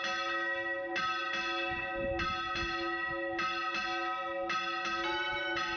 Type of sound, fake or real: real